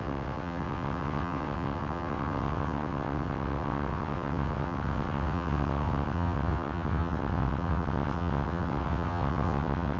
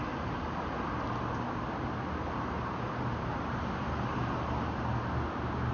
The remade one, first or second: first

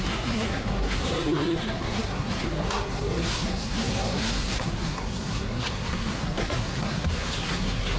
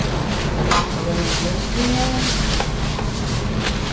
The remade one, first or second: first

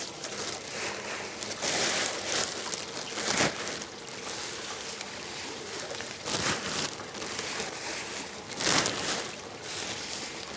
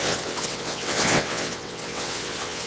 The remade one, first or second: second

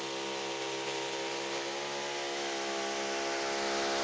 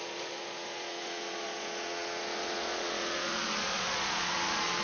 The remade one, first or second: second